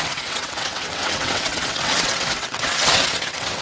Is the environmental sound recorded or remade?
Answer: remade